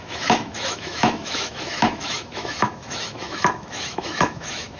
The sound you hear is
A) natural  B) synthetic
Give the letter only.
B